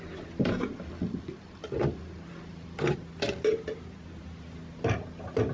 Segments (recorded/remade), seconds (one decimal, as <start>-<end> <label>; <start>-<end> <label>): 0.0-5.5 recorded